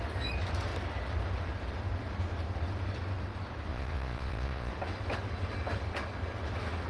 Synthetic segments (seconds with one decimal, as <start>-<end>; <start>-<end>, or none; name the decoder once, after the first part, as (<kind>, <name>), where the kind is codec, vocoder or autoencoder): 3.7-4.7 (vocoder, Vocos)